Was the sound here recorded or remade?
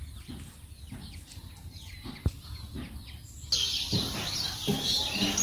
recorded